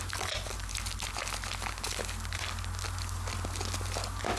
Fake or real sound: real